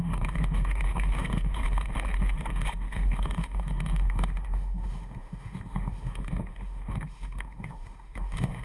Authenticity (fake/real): fake